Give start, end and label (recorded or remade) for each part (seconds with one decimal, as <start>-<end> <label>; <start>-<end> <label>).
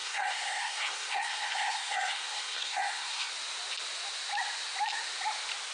0.0-3.3 remade; 3.3-5.7 recorded